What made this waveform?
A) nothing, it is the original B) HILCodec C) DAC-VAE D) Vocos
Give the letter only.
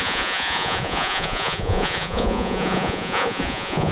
D